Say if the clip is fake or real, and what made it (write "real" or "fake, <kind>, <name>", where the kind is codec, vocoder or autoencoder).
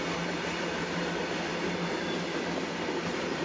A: real